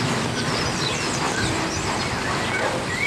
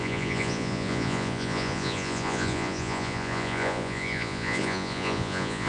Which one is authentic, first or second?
first